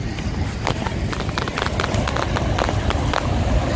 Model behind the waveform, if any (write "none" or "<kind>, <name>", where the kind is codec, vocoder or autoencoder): none